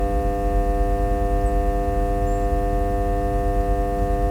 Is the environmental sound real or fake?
real